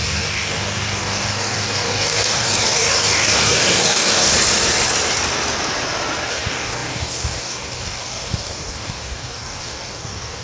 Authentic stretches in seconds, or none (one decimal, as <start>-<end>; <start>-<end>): 4.3-6.3